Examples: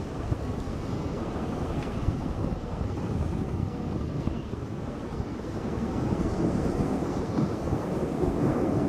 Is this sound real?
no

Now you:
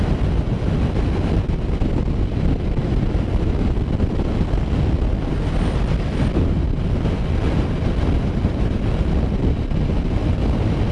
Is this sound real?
yes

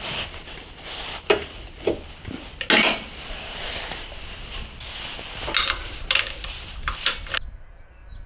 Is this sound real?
yes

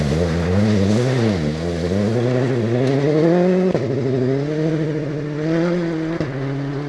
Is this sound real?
yes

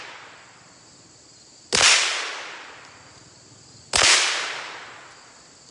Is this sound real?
yes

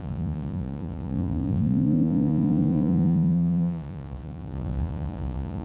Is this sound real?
no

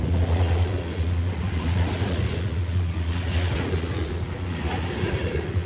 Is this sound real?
no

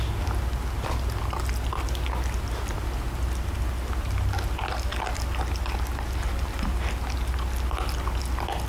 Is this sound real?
yes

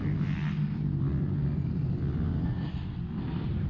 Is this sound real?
yes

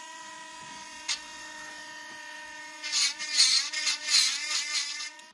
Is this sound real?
no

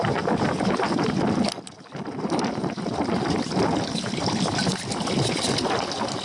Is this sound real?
yes